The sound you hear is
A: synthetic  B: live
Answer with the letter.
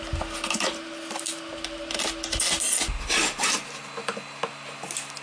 B